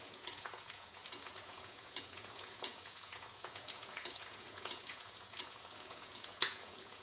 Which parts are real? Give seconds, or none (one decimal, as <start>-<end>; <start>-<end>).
none